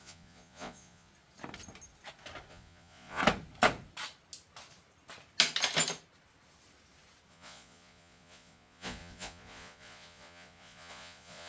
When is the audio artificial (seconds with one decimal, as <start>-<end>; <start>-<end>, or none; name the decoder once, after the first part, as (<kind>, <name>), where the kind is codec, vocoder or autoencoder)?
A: 0.0-1.1 (vocoder, Vocos); 2.5-3.2; 7.3-11.5